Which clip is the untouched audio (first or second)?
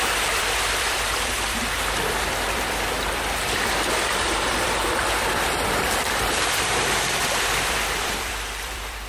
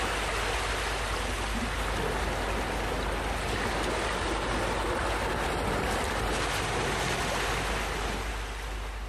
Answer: second